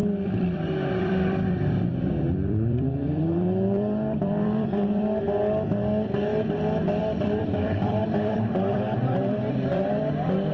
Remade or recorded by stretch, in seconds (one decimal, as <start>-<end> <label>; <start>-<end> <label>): 0.0-5.0 remade; 5.0-7.0 recorded; 7.0-10.5 remade